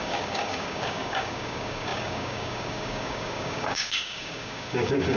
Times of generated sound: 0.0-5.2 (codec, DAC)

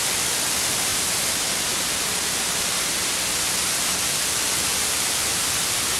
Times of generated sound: none